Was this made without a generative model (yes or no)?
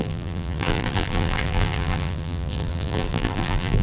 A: no